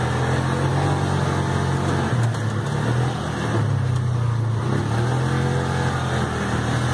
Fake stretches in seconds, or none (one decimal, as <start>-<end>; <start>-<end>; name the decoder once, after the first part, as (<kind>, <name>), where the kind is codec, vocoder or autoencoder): none